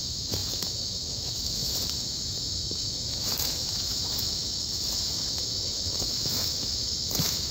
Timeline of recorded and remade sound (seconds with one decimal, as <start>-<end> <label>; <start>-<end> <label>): 0.0-7.5 remade